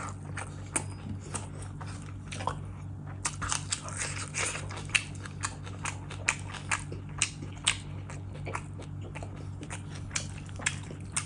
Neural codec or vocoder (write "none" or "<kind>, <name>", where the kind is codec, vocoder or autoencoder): none